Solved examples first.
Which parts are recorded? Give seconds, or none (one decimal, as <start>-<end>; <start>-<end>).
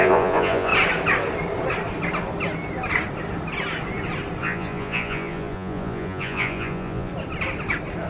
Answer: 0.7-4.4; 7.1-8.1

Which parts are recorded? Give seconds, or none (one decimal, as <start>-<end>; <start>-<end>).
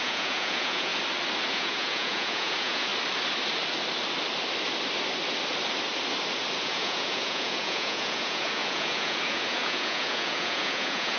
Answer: 0.9-1.5; 2.9-6.6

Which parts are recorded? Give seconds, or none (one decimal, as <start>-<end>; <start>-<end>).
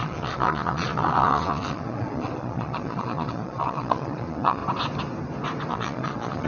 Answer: 4.6-5.7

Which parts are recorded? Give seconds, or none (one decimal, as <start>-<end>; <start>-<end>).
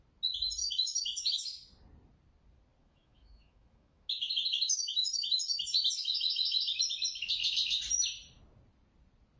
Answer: 0.0-0.6; 1.3-2.8; 5.7-9.4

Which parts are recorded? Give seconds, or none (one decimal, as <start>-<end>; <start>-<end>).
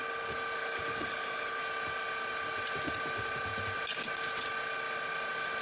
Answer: 0.0-0.6; 1.6-5.6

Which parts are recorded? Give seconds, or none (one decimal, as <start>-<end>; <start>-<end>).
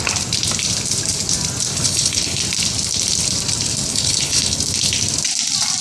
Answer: 0.0-1.7; 2.4-3.9; 4.6-5.8